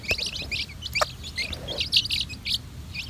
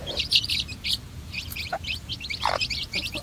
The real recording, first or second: first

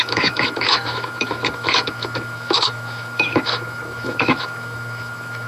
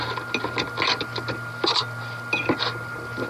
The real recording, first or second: second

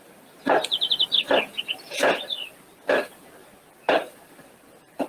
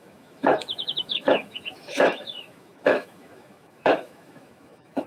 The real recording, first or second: first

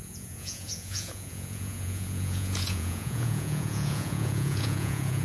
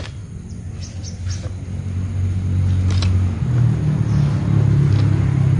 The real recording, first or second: second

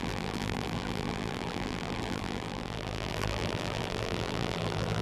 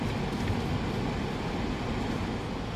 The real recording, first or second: second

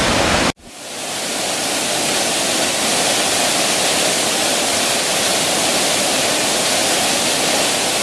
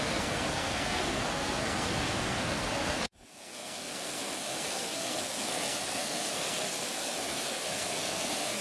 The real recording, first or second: first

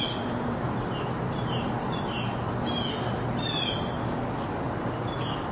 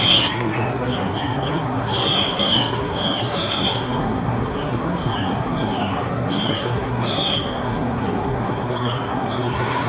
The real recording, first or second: first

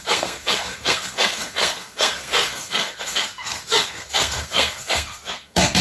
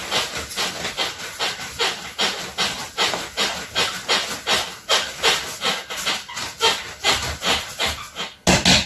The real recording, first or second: second